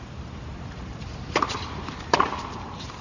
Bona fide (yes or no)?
no